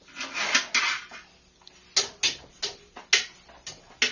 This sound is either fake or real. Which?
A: real